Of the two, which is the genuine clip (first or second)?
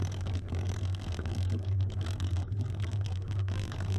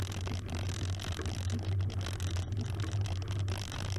second